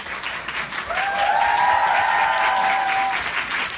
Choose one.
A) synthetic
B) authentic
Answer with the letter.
B